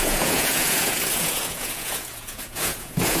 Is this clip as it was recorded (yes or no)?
no